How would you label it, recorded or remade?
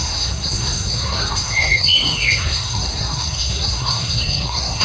remade